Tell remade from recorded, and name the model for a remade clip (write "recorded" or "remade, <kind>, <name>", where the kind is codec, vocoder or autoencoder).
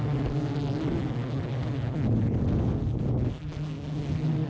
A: recorded